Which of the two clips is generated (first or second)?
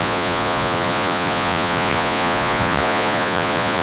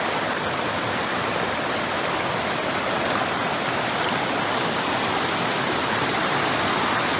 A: first